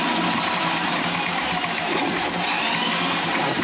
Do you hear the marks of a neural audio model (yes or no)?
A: yes